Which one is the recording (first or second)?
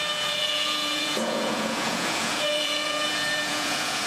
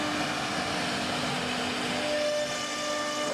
second